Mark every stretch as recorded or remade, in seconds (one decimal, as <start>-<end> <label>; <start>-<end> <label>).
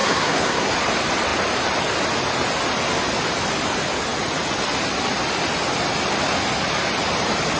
0.0-0.7 remade; 0.7-7.6 recorded